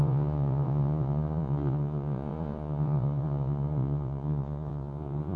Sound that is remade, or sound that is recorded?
remade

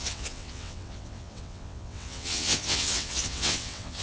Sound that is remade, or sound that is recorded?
remade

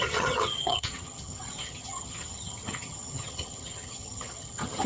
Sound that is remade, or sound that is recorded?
remade